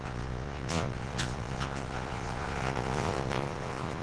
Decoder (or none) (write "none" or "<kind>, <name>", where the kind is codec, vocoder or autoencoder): vocoder, Vocos